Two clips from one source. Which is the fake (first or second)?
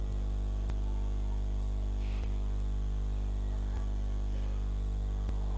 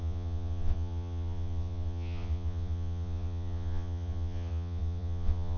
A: second